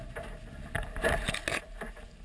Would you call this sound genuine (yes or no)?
yes